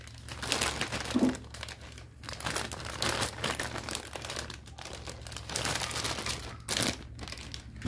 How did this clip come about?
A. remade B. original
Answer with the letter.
B